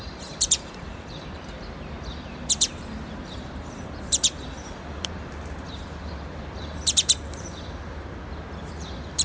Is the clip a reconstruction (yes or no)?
yes